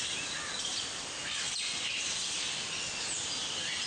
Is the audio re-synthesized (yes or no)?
no